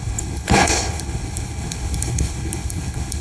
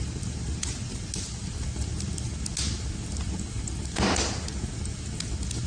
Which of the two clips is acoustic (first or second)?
second